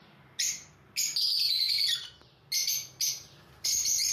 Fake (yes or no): no